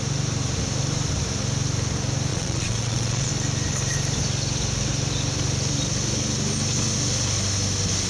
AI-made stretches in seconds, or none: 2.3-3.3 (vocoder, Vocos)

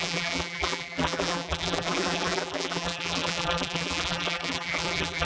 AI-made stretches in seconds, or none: 0.0-5.2 (vocoder, BigVGAN v2)

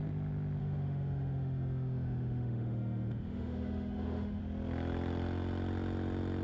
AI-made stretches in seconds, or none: 0.6-4.4 (autoencoder, DAC-VAE)

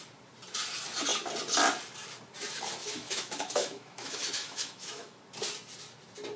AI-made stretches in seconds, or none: 2.8-5.2 (autoencoder, DAC-VAE)

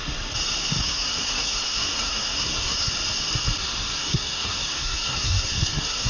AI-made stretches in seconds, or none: 0.8-2.9 (codec, SNAC); 4.0-6.1

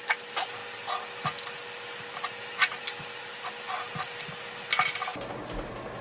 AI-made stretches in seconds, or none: none

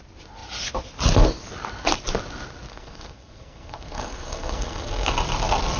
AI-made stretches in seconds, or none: 2.7-5.1 (codec, SNAC)

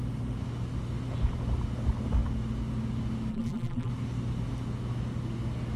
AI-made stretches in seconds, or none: 3.3-3.9 (vocoder, BigVGAN v2)